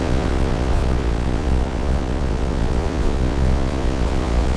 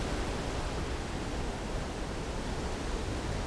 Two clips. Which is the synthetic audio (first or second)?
first